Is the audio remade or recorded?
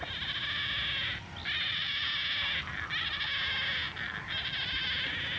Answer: recorded